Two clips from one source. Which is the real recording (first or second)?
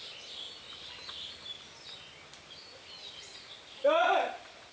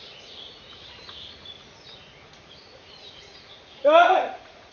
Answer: first